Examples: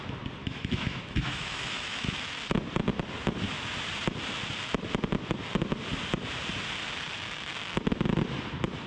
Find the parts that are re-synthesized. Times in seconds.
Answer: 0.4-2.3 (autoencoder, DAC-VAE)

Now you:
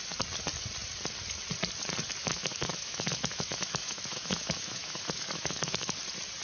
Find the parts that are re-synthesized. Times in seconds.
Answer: 2.2-6.0 (autoencoder, DAC-VAE)

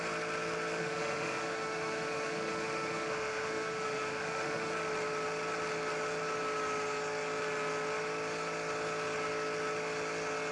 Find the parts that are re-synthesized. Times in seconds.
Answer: 0.8-4.7 (autoencoder, DAC-VAE)

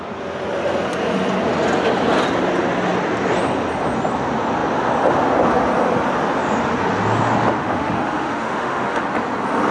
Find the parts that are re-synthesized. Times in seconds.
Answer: 7.6-9.0 (autoencoder, DAC-VAE)